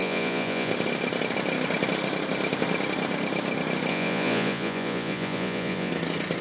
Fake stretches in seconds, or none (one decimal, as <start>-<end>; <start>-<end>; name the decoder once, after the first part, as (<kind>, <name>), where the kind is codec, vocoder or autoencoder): 0.0-0.7 (vocoder, Vocos); 3.9-5.9